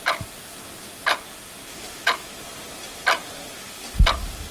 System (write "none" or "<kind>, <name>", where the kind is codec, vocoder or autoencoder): none